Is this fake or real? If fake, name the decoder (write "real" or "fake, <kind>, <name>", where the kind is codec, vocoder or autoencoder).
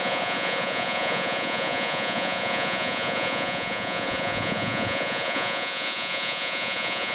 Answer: fake, vocoder, Vocos